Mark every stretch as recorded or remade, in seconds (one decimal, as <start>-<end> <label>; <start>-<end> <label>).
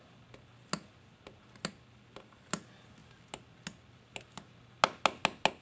0.0-5.6 recorded